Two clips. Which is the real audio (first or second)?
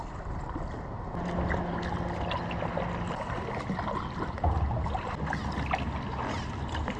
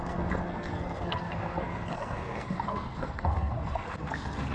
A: first